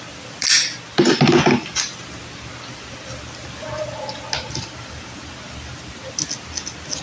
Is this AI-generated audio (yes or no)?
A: no